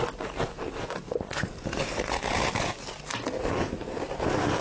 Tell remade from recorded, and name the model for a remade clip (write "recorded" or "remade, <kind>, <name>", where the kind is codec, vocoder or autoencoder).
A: recorded